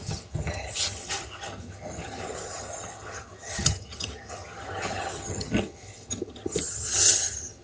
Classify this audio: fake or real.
fake